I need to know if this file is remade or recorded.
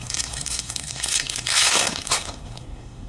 remade